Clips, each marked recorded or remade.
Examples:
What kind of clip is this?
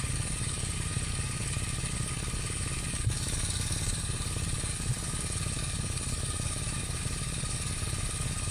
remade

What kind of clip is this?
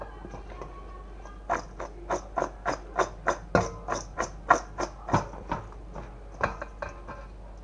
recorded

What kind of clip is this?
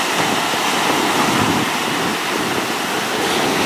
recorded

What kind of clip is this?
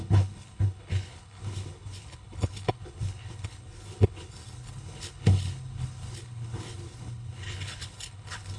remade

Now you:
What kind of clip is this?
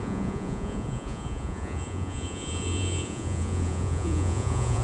remade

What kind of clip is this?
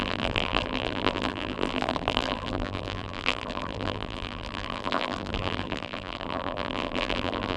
remade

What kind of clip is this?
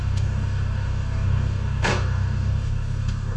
remade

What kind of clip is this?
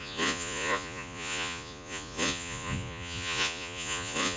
remade